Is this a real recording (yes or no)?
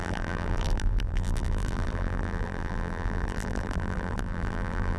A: no